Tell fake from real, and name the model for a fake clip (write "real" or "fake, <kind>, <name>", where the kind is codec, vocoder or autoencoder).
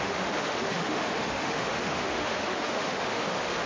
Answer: fake, autoencoder, DAC-VAE